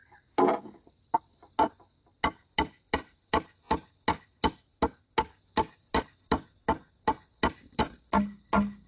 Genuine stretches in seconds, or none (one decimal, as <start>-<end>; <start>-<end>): 0.0-8.9